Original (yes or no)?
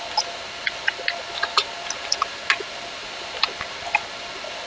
yes